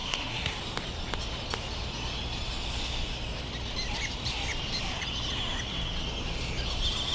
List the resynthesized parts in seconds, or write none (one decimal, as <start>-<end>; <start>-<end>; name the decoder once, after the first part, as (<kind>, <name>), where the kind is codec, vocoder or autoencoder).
0.0-0.6 (codec, SNAC)